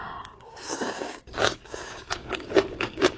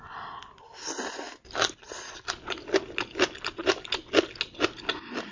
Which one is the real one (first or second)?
second